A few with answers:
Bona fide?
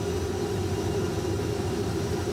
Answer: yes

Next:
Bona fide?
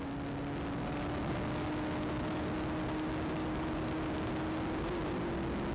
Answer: yes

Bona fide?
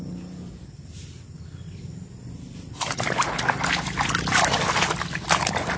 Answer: yes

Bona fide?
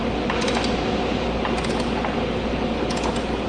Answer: yes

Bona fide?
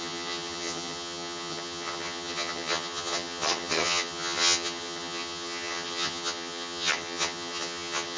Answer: no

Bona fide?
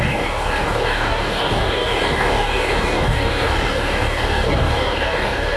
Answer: no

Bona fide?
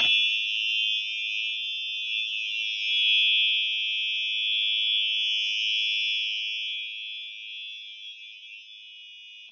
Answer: yes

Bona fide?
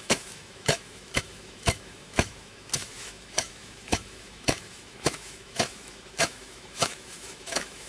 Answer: no